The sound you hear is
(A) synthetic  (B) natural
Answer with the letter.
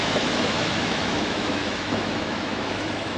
A